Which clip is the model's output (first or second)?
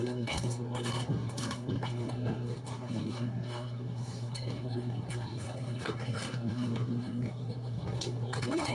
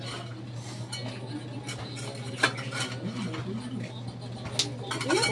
first